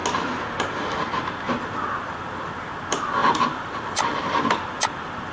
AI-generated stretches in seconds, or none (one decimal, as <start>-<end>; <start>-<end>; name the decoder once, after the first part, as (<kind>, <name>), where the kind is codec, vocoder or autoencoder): 1.5-5.3 (vocoder, BigVGAN v2)